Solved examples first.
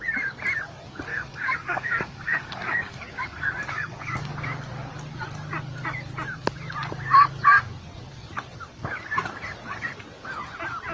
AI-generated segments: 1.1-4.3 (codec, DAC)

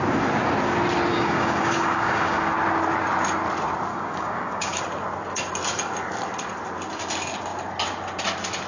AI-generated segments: 1.1-2.5 (codec, DAC); 3.9-4.8